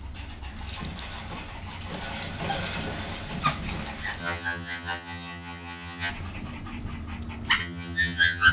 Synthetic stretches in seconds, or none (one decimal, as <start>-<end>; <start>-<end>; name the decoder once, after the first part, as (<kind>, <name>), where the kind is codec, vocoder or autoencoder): 4.2-6.1 (vocoder, HiFi-GAN); 7.6-8.5